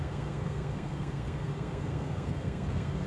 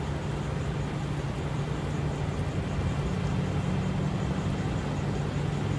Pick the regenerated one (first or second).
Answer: first